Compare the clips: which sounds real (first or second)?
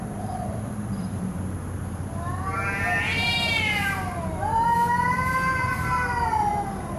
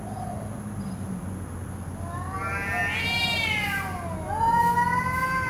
second